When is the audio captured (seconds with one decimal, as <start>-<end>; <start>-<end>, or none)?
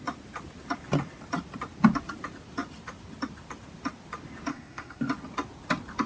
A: 0.0-4.5; 5.0-6.1